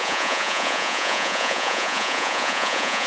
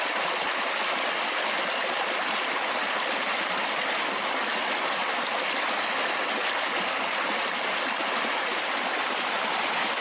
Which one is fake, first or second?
first